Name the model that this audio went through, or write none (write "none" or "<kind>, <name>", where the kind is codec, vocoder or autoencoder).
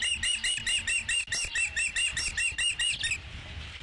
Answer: none